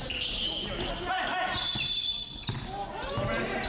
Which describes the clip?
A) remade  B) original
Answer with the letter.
B